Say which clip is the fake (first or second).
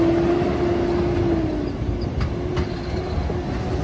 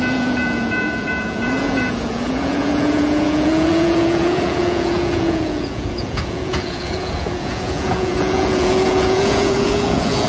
second